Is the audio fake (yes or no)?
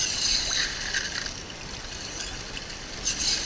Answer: no